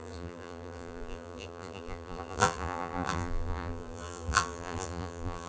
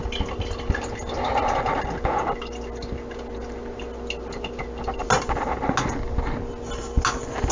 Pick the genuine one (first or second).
second